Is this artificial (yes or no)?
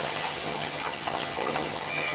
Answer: yes